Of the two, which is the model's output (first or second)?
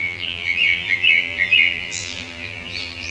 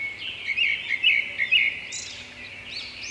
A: first